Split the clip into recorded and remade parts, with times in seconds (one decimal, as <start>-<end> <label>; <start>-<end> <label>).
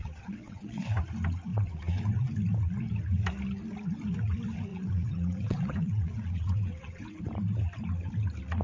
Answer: 0.0-1.0 remade; 1.0-1.5 recorded; 1.5-2.0 remade; 2.0-4.7 recorded; 4.7-7.2 remade; 7.2-8.6 recorded